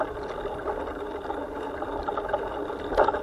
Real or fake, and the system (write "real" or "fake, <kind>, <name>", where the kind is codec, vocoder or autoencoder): real